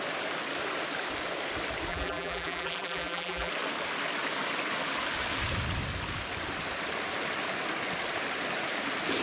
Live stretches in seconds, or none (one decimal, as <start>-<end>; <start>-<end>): 0.0-1.9; 3.5-9.2